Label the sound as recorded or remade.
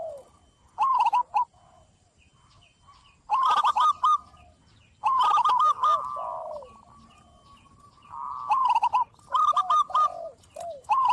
recorded